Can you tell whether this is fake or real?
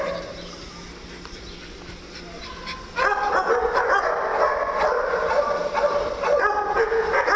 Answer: real